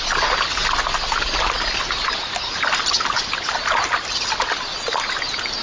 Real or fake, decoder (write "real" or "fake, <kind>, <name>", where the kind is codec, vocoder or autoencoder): real